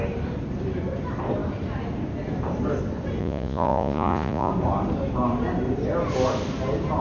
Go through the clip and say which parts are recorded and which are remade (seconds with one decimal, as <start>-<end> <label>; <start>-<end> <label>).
0.0-3.2 recorded; 3.2-4.5 remade; 4.5-7.0 recorded